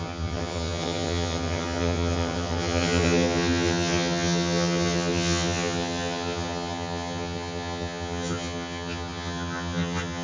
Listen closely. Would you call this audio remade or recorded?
remade